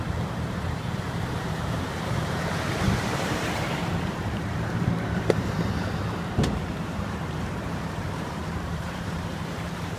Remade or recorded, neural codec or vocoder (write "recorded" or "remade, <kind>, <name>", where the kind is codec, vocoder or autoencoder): remade, vocoder, BigVGAN v2